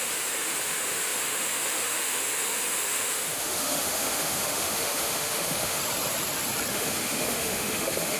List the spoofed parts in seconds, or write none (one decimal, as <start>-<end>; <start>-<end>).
0.0-5.8; 6.7-8.2